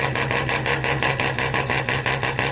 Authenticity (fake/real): real